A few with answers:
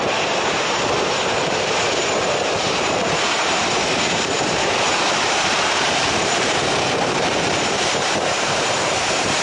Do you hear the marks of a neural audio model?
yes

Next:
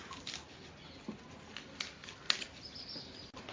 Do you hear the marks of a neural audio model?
no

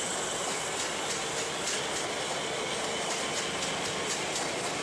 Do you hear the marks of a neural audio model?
no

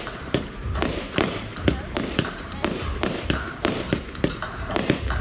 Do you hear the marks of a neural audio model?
yes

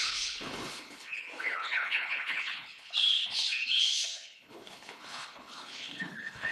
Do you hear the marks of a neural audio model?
yes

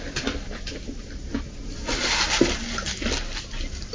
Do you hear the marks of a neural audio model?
no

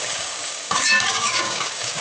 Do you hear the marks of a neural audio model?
yes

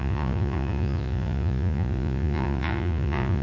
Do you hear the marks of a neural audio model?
yes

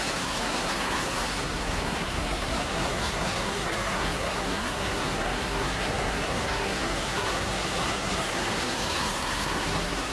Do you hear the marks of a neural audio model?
yes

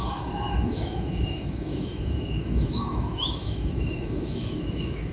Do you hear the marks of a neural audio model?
yes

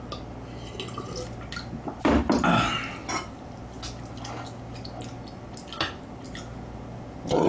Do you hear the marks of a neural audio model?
no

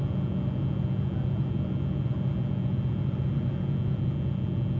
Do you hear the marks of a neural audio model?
no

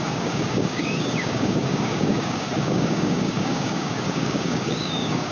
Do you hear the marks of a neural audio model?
yes